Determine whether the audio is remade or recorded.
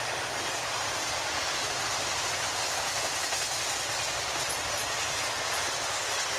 recorded